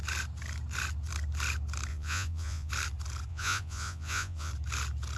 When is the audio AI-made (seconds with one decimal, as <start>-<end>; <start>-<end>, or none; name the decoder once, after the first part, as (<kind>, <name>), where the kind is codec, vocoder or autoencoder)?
1.9-2.7 (vocoder, Vocos); 3.3-4.5